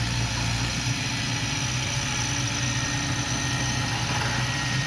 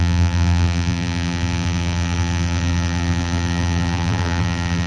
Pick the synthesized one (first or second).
second